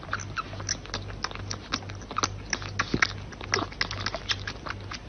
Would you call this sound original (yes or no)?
yes